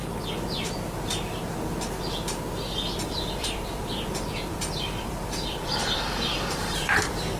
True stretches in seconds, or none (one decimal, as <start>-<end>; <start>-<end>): 0.0-3.1